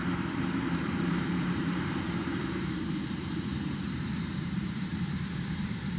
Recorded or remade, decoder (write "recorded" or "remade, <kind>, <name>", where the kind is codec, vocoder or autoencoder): remade, vocoder, BigVGAN v2